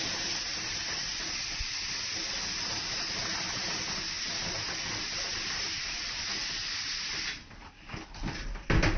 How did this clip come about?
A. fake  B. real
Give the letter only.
B